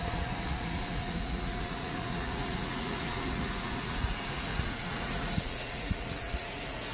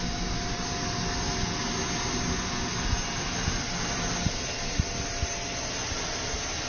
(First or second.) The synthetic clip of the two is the first